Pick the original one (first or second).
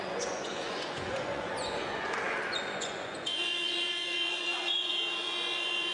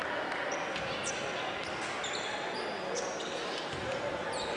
second